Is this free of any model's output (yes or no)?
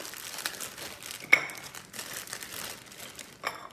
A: yes